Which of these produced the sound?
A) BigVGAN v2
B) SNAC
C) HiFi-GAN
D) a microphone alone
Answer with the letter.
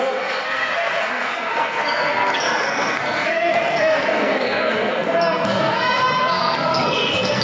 B